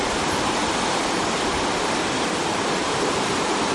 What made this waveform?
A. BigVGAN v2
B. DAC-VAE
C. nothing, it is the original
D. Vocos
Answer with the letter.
C